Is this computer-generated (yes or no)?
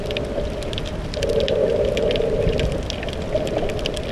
no